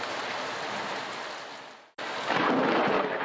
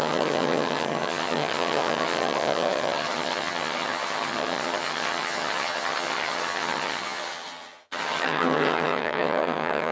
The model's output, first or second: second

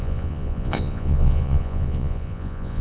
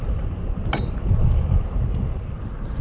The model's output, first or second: first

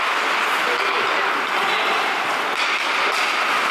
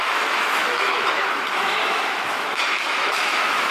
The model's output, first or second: second